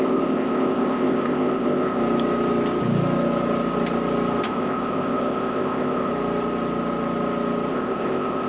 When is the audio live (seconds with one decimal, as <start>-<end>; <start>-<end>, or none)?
2.0-4.4; 6.1-7.7